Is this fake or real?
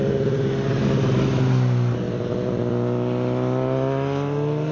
real